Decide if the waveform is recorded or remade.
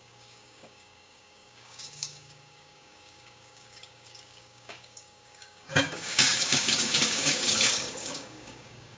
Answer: remade